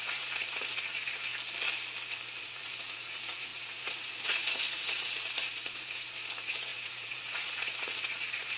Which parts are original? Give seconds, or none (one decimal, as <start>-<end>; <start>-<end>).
1.3-2.4